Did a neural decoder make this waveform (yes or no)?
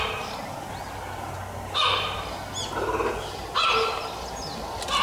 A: no